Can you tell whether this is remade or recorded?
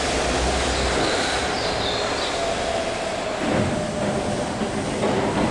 recorded